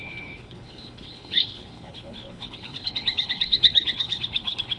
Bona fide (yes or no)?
no